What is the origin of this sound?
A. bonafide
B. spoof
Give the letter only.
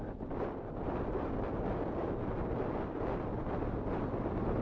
A